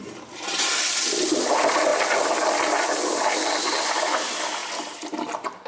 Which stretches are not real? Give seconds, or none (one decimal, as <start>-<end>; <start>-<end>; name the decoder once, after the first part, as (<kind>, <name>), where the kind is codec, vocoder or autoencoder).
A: none